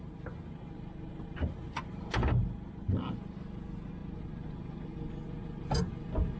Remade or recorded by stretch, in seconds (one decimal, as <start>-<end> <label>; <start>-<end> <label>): 0.0-6.4 recorded